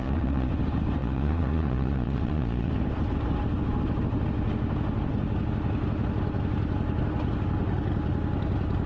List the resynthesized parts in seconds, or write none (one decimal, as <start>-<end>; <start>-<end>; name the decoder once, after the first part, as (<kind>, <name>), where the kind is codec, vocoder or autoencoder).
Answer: 0.0-0.5 (vocoder, Vocos); 1.0-2.7